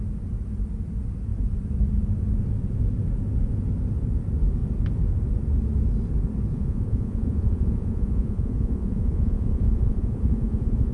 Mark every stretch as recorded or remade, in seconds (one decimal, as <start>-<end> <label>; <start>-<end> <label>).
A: 0.0-6.5 recorded; 6.5-10.9 remade